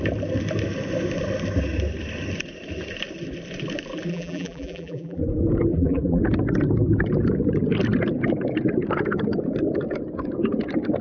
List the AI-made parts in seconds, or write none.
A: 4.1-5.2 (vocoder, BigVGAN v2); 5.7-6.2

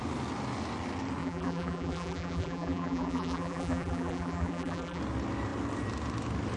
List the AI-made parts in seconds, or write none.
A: 1.2-5.0 (vocoder, BigVGAN v2)

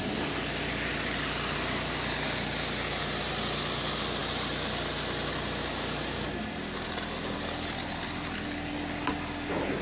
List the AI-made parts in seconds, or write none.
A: none

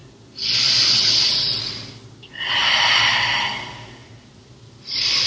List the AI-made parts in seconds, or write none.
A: 4.0-5.3 (vocoder, BigVGAN v2)